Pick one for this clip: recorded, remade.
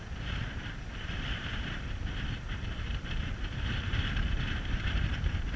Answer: remade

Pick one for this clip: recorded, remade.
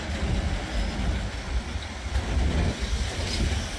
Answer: recorded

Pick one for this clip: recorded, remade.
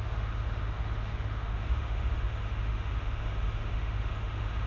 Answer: remade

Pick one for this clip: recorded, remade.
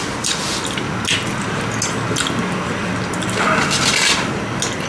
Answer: recorded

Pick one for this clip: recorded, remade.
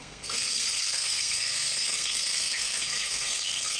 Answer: remade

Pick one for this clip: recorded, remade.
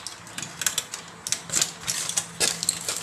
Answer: recorded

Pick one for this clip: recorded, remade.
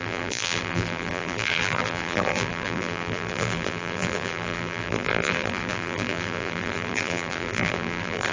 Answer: remade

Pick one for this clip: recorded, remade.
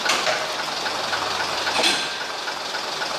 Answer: recorded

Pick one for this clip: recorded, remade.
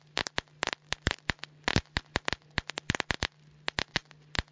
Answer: recorded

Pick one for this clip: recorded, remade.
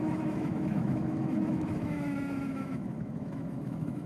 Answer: remade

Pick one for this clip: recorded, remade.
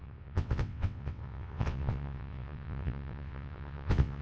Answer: remade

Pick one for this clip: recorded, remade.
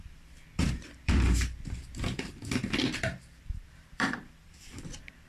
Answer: remade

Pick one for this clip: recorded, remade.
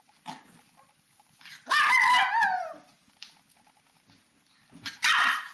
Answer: recorded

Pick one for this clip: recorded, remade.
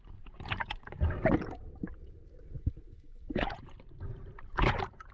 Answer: remade